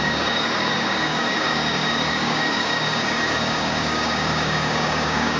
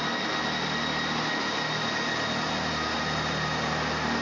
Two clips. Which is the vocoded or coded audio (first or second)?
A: first